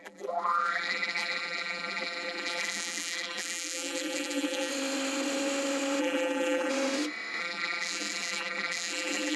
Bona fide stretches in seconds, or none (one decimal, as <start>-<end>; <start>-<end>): 4.7-6.0; 6.7-7.4